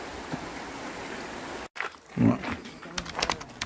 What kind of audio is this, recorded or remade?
recorded